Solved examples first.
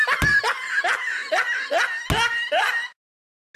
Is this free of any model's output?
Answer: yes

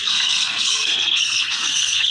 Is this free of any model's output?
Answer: no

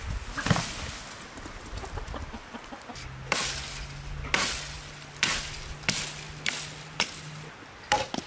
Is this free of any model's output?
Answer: yes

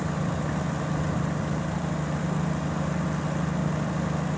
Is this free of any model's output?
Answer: yes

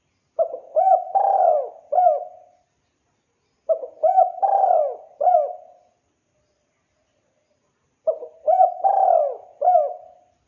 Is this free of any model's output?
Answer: yes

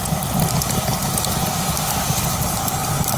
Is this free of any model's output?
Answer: yes